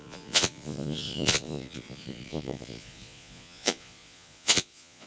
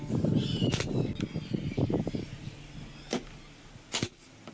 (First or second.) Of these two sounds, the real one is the second